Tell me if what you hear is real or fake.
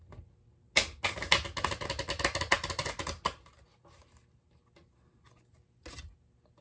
real